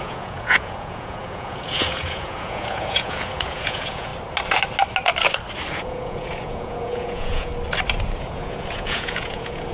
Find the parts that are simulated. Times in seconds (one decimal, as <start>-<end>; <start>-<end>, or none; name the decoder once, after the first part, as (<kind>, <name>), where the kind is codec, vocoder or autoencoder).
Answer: 0.0-4.1 (vocoder, Vocos); 5.7-7.5; 8.2-9.7